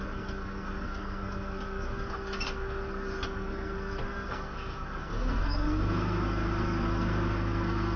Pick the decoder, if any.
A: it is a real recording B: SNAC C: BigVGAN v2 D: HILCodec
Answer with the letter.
B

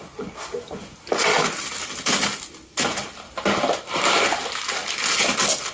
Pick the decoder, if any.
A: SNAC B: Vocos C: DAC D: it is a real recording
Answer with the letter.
D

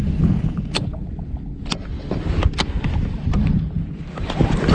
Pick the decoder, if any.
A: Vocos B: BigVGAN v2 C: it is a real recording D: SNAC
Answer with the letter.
C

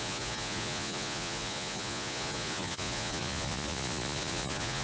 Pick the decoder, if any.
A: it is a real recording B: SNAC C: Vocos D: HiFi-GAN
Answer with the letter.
C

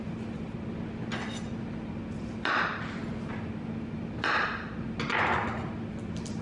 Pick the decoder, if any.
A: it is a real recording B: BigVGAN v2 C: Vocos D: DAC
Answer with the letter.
A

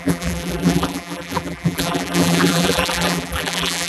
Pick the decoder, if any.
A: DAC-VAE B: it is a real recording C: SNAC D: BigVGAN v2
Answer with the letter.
D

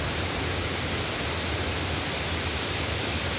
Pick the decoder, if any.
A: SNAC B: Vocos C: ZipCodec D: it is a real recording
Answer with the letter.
D